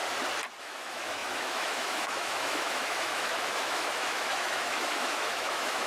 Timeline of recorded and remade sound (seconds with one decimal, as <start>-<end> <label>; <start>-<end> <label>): 0.0-0.6 recorded; 0.6-5.9 remade